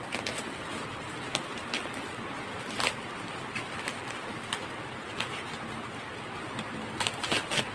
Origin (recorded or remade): recorded